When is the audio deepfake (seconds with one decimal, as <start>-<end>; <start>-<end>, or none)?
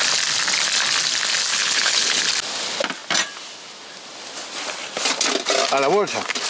1.5-2.2